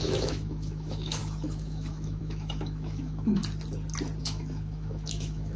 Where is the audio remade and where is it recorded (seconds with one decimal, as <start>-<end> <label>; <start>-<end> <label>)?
0.0-3.4 remade; 3.4-4.2 recorded; 4.2-5.6 remade